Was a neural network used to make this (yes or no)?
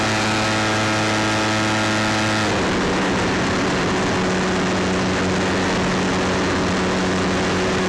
no